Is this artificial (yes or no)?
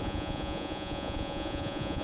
yes